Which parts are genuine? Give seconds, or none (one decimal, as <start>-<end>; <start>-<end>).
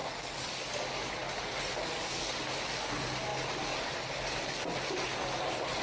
0.0-5.8